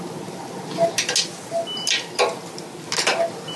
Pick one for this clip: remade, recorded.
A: recorded